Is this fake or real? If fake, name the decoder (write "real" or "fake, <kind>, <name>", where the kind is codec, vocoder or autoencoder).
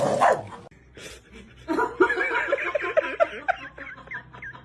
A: real